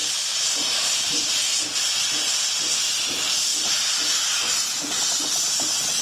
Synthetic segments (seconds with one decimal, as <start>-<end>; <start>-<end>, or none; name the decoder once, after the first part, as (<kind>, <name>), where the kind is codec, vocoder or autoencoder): 0.0-1.3 (vocoder, BigVGAN v2)

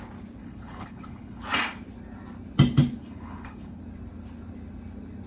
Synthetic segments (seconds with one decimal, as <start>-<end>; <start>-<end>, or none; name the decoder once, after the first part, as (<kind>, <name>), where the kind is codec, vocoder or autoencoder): 0.4-1.4 (codec, HILCodec); 3.0-3.8

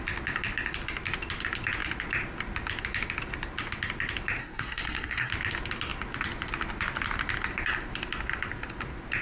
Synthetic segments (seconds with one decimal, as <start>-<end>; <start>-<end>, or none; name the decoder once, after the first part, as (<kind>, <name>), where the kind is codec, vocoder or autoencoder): 4.4-5.3 (codec, SNAC)

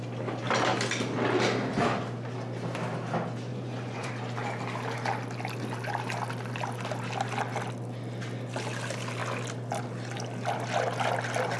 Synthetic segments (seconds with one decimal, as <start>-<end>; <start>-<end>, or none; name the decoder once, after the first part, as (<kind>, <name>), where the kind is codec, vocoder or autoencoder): 3.5-4.1 (vocoder, Vocos)

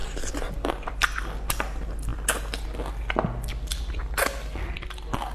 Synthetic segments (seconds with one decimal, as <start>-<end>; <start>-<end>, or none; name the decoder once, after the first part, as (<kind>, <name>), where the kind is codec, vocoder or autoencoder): 0.0-0.9 (vocoder, BigVGAN v2)

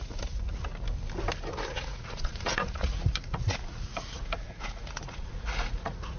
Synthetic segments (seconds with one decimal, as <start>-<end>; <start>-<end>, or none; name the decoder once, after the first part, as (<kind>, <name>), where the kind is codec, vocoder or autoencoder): 0.0-0.7 (vocoder, Vocos); 1.7-6.2

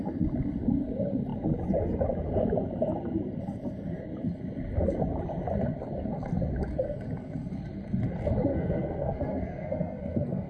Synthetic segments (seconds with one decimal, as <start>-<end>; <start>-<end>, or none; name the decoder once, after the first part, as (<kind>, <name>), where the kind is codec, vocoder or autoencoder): 8.5-10.5 (codec, SNAC)

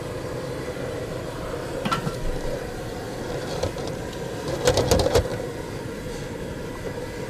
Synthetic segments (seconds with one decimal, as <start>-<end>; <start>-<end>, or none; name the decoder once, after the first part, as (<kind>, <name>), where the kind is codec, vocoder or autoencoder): none